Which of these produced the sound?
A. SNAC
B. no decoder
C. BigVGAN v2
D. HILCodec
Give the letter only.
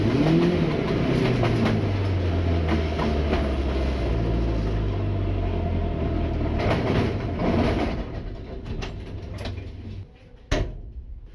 B